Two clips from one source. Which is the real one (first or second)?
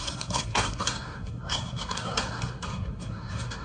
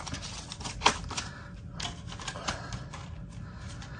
second